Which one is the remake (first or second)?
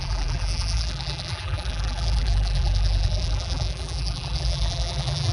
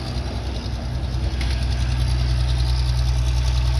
first